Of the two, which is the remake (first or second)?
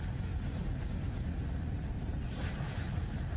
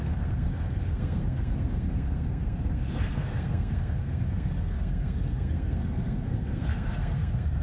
second